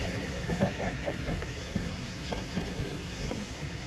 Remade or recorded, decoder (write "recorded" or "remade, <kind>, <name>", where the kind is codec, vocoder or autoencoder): remade, codec, SNAC